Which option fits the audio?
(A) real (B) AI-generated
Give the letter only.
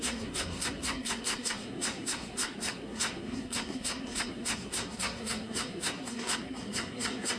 B